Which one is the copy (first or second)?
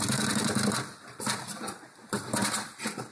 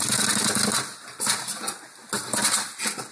first